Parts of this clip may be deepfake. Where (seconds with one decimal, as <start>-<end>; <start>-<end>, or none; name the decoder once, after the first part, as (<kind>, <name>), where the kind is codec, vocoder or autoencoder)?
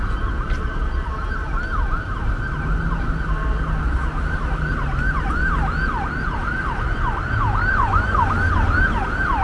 7.7-8.3 (vocoder, Vocos)